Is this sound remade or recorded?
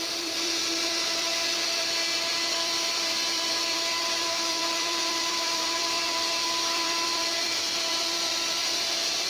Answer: remade